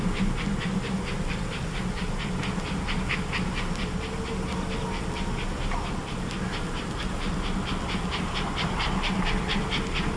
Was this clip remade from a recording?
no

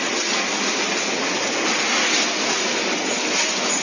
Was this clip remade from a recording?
no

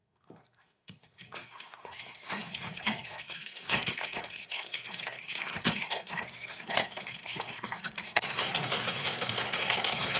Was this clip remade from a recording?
yes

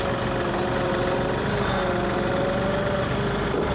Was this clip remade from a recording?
no